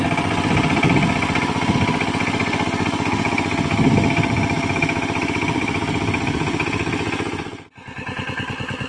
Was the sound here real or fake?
real